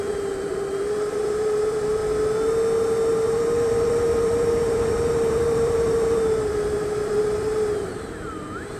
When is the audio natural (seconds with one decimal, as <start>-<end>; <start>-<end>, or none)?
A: 2.0-3.1